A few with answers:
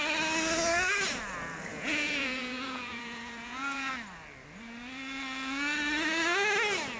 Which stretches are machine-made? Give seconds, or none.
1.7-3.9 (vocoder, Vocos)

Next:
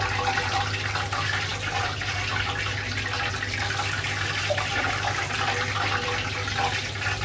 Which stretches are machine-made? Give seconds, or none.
none

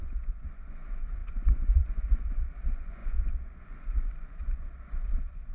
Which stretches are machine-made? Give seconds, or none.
0.0-5.5 (vocoder, Vocos)

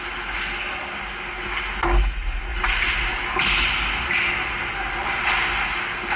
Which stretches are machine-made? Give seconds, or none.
none

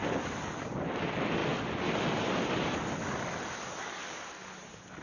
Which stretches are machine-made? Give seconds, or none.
none

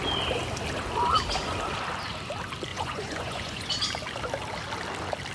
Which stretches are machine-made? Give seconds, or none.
2.7-3.7 (vocoder, Vocos)

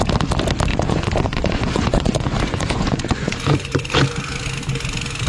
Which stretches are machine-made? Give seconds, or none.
0.7-3.9 (vocoder, Vocos)

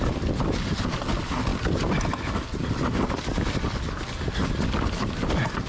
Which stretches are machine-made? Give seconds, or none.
none